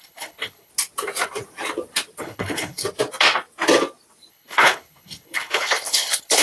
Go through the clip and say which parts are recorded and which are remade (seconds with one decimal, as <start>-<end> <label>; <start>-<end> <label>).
0.0-0.7 remade; 0.7-2.2 recorded; 2.2-2.8 remade; 2.8-4.3 recorded; 4.3-6.4 remade